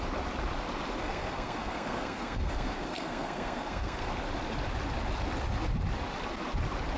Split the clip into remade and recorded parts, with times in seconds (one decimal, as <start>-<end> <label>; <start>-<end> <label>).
0.0-1.0 recorded; 1.0-4.1 remade; 4.1-7.0 recorded